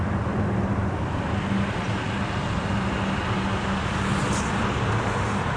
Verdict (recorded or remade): recorded